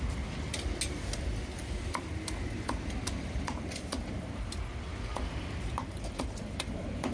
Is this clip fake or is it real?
real